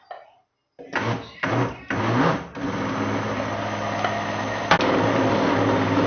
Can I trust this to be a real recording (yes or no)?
yes